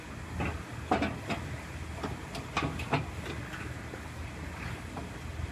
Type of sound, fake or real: real